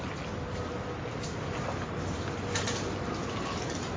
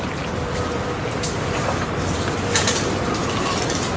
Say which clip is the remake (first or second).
second